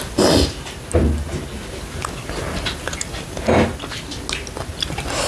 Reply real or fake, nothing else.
real